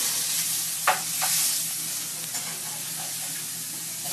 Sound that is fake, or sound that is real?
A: real